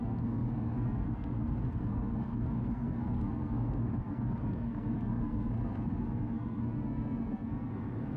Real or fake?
fake